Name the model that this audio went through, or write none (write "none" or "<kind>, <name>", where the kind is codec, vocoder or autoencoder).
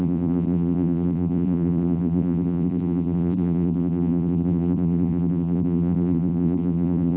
vocoder, BigVGAN v2